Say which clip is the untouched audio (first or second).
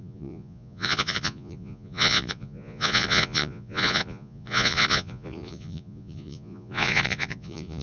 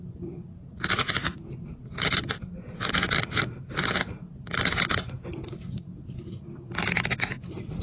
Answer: second